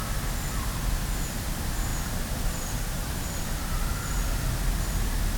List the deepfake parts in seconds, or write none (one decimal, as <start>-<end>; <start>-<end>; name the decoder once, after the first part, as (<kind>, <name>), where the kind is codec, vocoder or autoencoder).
1.9-4.2 (vocoder, BigVGAN v2)